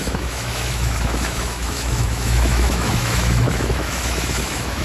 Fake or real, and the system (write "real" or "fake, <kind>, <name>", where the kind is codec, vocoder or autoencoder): fake, autoencoder, DAC-VAE